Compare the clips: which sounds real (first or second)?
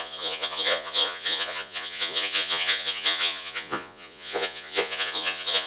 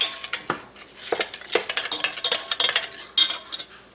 second